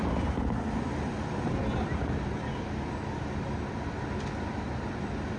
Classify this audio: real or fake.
real